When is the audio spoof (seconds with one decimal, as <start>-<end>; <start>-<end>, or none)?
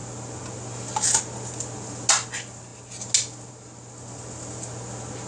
none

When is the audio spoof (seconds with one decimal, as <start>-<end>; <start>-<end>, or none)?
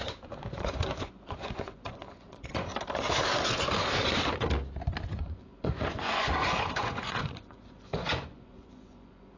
0.0-2.7; 5.1-9.4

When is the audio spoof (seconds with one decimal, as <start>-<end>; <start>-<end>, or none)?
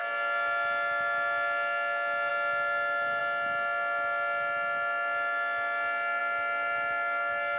none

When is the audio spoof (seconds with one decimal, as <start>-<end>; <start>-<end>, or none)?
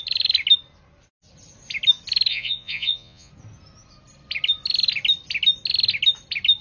2.3-3.3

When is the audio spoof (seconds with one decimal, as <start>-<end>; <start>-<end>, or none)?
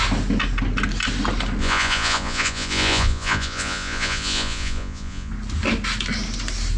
1.6-5.3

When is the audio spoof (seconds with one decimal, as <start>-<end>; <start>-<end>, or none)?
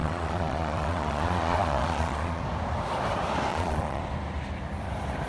0.0-2.4; 3.5-4.0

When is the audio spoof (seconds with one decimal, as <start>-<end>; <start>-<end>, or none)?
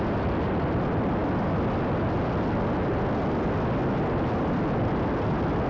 none